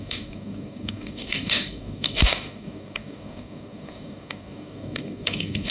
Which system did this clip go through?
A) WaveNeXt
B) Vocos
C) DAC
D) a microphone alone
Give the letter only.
C